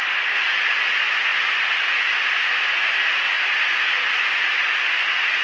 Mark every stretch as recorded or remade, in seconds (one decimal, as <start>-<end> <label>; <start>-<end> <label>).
0.0-5.4 recorded